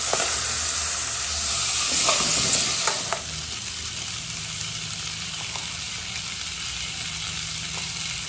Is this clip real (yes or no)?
yes